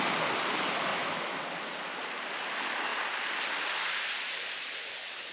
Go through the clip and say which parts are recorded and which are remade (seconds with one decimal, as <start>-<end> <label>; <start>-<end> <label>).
0.0-0.9 recorded; 0.9-1.4 remade; 1.4-5.3 recorded